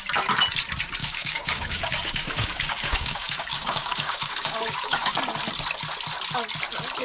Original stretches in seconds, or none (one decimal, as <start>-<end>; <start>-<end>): 0.0-1.0; 5.2-7.0